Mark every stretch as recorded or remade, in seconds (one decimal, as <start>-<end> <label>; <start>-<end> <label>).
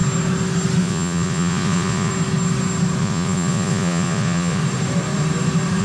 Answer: 0.0-0.8 recorded; 0.8-2.1 remade; 2.1-3.0 recorded; 3.0-4.6 remade; 4.6-5.8 recorded